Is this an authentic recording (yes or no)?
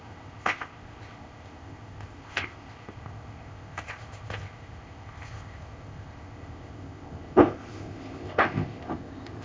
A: no